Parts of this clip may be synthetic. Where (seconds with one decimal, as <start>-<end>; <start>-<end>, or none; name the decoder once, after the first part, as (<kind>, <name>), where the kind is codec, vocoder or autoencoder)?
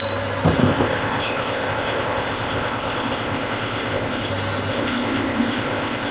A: 0.6-4.3 (codec, ZipCodec); 4.7-6.1